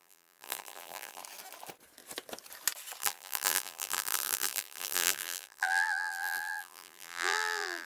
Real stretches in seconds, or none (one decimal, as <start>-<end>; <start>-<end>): 1.2-3.0